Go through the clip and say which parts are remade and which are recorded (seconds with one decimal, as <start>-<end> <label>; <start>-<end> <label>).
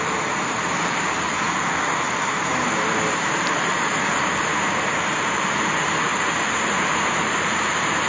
0.0-1.3 remade; 1.3-1.9 recorded; 1.9-3.7 remade; 3.7-4.4 recorded; 4.4-8.1 remade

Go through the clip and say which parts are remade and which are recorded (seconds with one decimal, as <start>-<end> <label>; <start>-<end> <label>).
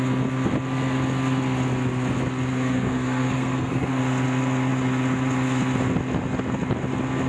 0.0-2.5 recorded; 2.5-4.0 remade; 4.0-7.3 recorded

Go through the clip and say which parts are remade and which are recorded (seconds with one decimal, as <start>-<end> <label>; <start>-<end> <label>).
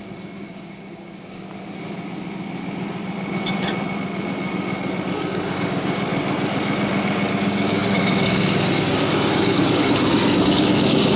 0.0-1.4 remade; 1.4-5.1 recorded; 5.1-6.1 remade; 6.1-7.3 recorded; 7.3-11.2 remade